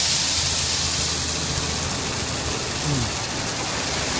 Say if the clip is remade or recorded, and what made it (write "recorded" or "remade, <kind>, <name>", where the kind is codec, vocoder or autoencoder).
recorded